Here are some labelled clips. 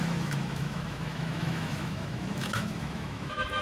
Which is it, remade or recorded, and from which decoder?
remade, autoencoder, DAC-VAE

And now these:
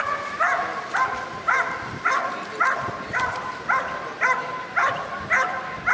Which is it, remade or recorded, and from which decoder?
recorded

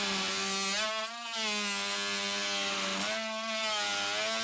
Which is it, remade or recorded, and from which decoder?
recorded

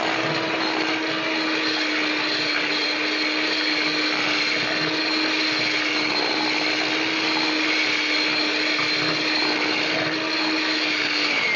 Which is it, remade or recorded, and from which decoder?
recorded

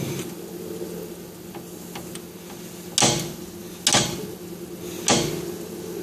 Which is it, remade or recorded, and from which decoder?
recorded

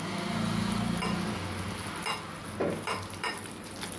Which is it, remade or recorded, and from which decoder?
recorded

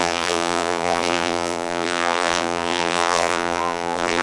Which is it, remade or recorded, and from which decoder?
remade, vocoder, BigVGAN v2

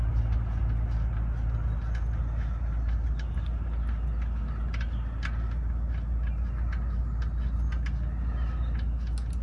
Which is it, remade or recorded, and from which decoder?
recorded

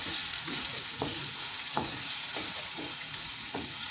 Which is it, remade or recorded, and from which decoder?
remade, vocoder, Vocos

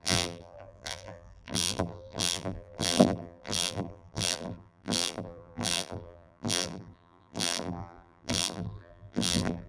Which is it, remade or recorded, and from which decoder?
remade, vocoder, BigVGAN v2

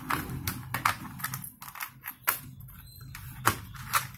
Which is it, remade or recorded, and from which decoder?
recorded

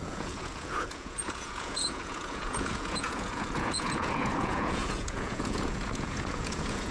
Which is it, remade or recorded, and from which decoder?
remade, vocoder, Vocos